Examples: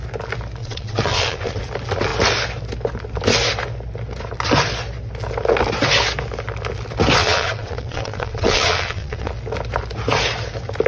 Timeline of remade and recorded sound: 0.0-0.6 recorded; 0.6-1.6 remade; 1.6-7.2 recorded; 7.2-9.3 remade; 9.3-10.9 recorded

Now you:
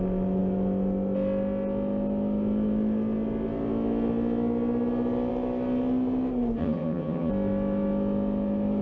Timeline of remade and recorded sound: 0.0-6.6 recorded; 6.6-7.3 remade; 7.3-8.8 recorded